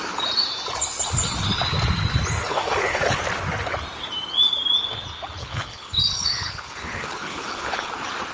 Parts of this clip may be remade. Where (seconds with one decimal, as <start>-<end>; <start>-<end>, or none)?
2.5-3.2; 5.4-7.9